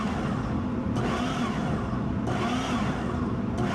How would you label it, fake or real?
real